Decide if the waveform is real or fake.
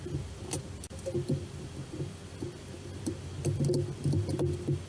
real